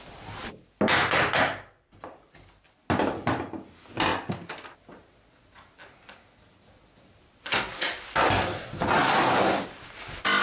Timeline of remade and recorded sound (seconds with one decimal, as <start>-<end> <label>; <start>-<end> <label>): 0.0-10.4 recorded

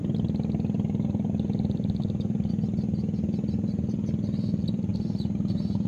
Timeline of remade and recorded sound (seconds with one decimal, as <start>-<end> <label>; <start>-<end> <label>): 0.0-2.5 remade; 2.5-4.9 recorded; 4.9-5.9 remade

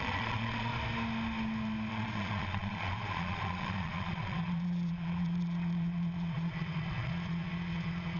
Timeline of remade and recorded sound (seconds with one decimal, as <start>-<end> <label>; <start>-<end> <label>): 0.0-0.7 remade; 0.7-1.9 recorded; 1.9-8.2 remade

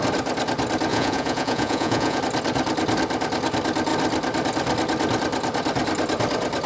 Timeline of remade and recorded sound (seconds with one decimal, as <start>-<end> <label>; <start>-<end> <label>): 0.0-0.9 recorded; 0.9-2.2 remade; 2.2-6.7 recorded

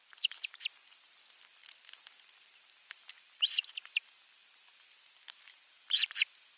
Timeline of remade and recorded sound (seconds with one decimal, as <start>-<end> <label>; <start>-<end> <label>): 0.0-1.6 recorded; 1.6-5.6 remade; 5.6-6.6 recorded

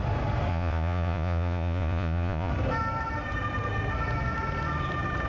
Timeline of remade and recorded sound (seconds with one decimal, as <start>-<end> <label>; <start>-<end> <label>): 0.0-0.5 recorded; 0.5-2.5 remade; 2.5-5.3 recorded

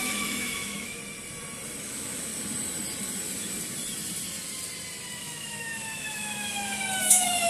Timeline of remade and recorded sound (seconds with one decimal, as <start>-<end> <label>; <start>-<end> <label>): 0.0-1.0 remade; 1.0-1.8 recorded; 1.8-2.3 remade; 2.3-5.2 recorded; 5.2-7.5 remade